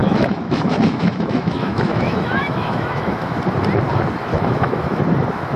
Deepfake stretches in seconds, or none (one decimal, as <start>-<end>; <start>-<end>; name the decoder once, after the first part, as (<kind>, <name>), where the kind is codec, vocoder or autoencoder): 0.0-3.4 (autoencoder, DAC-VAE); 4.3-5.0